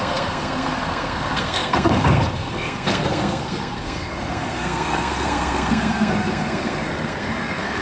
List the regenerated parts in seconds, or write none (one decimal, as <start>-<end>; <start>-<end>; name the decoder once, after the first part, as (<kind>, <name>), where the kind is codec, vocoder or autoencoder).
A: 0.0-7.8 (codec, SNAC)